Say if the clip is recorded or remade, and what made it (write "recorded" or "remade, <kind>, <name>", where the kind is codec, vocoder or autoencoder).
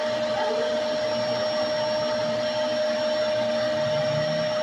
recorded